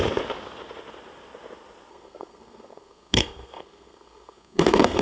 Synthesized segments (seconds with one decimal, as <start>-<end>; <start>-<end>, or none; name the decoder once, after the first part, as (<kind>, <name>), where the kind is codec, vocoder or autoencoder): 1.9-5.0 (codec, SNAC)